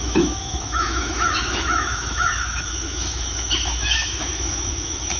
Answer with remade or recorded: remade